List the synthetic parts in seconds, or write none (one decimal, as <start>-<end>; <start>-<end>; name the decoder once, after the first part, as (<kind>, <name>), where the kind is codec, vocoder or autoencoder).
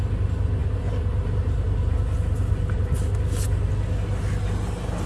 none